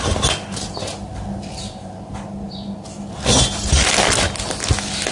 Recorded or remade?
recorded